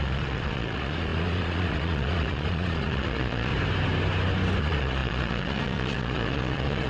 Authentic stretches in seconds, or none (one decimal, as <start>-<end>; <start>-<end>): 3.5-4.6